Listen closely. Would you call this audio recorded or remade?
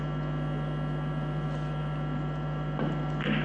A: recorded